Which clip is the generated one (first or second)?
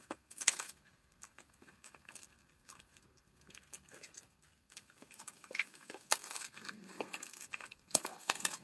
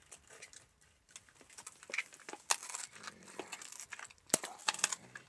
first